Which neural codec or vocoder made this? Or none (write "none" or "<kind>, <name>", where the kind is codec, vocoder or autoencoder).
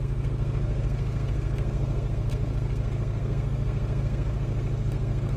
codec, SNAC